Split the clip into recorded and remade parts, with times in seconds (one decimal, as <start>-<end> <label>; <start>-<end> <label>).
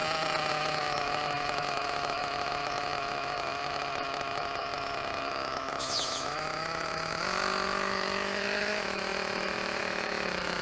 0.0-0.5 recorded; 0.5-10.6 remade